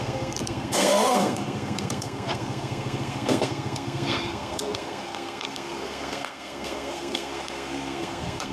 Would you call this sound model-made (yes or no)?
yes